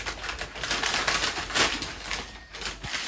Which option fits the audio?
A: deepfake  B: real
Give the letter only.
B